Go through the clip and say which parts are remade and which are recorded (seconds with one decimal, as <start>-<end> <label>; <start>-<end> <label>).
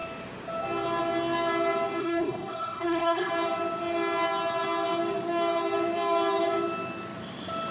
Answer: 0.0-2.0 recorded; 2.0-3.3 remade; 3.3-7.7 recorded